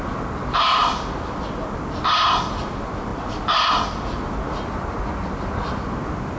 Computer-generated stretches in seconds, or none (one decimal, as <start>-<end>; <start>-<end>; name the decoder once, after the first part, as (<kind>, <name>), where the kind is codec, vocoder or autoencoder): none

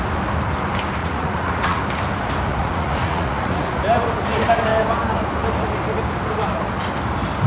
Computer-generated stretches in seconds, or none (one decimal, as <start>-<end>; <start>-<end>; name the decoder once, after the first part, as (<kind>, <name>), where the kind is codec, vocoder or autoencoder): 1.0-1.8 (vocoder, Vocos); 2.5-3.8

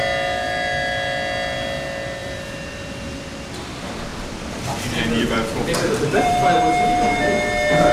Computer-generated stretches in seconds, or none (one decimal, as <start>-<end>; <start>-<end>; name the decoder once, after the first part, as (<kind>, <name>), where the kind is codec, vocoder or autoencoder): 2.2-3.0 (vocoder, BigVGAN v2); 4.1-6.3